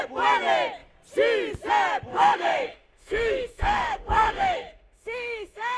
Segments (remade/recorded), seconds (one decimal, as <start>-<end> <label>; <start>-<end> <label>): 0.0-2.1 recorded; 2.1-5.8 remade